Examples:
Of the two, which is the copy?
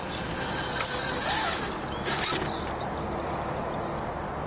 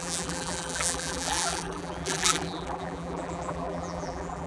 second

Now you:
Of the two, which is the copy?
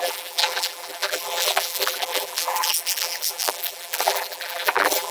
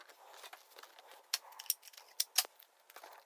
first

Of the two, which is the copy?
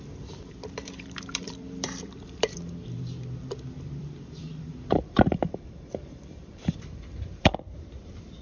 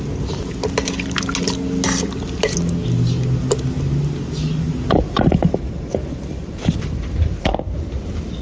first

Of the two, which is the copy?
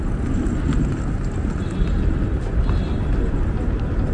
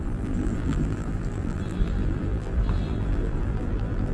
second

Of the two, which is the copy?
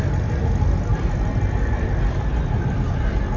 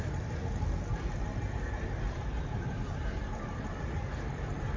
second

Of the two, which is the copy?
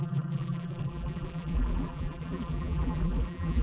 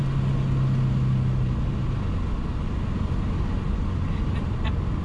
first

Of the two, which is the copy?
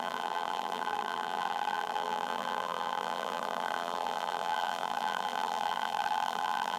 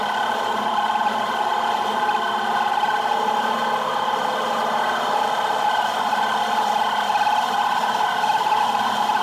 first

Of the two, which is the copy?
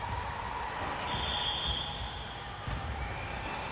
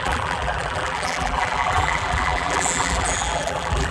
second